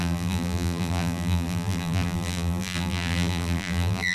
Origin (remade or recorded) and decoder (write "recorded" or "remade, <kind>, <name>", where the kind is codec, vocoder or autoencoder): remade, vocoder, BigVGAN v2